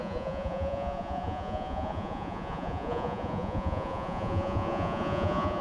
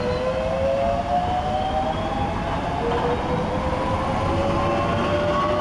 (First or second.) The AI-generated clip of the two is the first